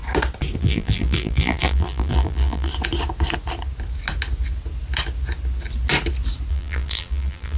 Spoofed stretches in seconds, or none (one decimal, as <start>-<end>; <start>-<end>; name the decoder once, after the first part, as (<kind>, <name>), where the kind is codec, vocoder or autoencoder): 0.6-2.7 (vocoder, BigVGAN v2); 6.5-7.6